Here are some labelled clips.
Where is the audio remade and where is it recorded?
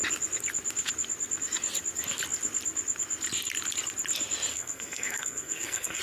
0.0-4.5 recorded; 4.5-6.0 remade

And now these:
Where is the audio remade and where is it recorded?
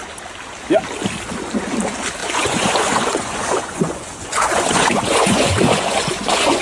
0.0-2.2 recorded; 2.2-6.6 remade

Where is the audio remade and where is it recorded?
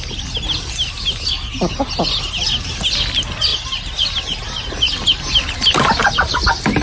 0.0-6.8 recorded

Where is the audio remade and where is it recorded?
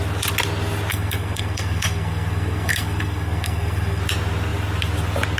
0.0-0.9 recorded; 0.9-4.0 remade; 4.0-5.4 recorded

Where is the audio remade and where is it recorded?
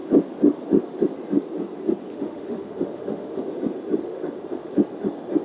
0.0-2.1 recorded; 2.1-3.4 remade; 3.4-4.0 recorded; 4.0-4.7 remade; 4.7-5.4 recorded